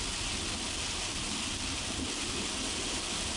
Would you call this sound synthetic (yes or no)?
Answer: no